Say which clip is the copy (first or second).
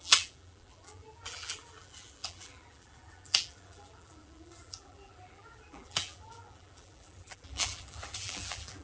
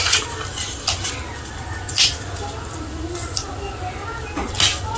first